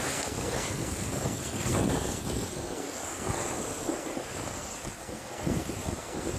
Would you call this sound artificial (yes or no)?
yes